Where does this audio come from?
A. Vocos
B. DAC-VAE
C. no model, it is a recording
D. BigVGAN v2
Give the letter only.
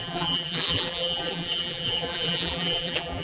D